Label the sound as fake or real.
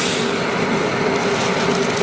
real